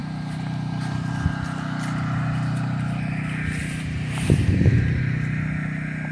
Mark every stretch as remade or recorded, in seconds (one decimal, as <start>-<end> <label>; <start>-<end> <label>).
0.0-1.1 remade; 1.1-3.6 recorded; 3.6-5.0 remade; 5.0-6.1 recorded